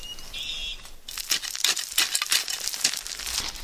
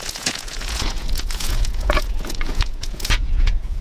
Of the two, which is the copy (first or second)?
second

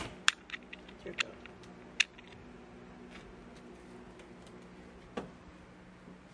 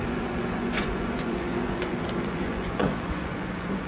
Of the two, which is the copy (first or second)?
second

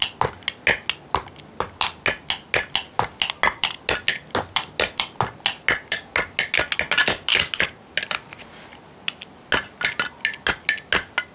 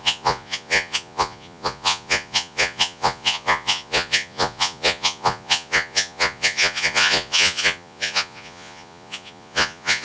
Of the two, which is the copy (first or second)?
second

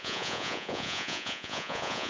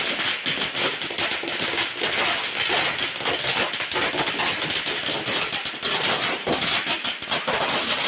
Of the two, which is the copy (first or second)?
first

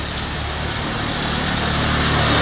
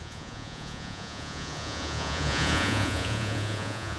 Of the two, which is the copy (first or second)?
second